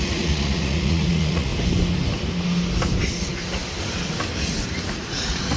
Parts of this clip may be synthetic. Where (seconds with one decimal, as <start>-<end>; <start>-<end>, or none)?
0.0-1.5; 4.9-5.6